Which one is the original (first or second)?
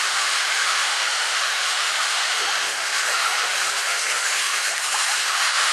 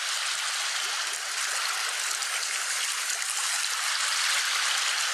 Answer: second